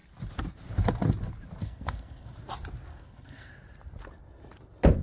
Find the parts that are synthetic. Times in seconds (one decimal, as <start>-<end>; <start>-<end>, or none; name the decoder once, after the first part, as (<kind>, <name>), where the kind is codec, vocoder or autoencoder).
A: 1.6-2.3 (codec, SNAC); 2.9-3.5